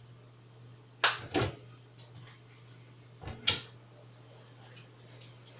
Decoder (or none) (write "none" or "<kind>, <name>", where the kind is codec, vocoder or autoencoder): none